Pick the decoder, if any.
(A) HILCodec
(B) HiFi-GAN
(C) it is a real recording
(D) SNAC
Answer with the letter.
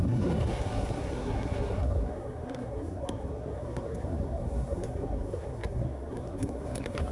D